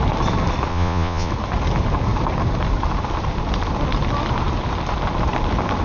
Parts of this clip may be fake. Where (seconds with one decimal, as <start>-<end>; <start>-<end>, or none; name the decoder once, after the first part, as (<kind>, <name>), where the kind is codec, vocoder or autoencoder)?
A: 0.7-1.3 (vocoder, Vocos)